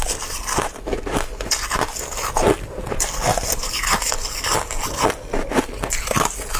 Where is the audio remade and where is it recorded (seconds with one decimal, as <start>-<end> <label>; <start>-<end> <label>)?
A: 0.0-6.6 recorded